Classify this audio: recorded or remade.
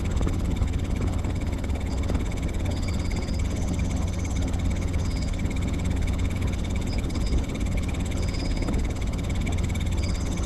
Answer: remade